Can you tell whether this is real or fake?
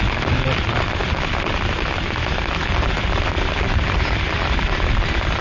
real